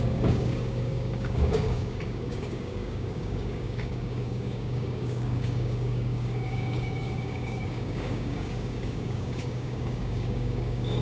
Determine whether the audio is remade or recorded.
remade